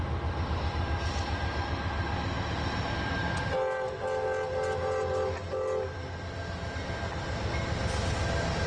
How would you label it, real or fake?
real